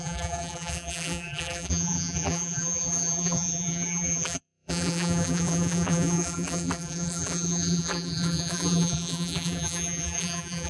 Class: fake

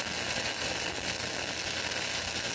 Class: real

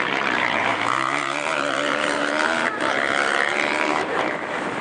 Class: fake